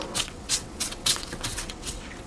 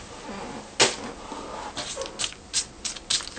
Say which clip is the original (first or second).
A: second